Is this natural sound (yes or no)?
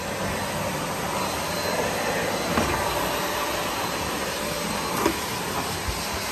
yes